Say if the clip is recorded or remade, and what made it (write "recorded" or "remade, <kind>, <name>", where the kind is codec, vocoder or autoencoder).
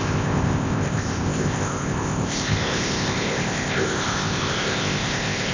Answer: remade, codec, ZipCodec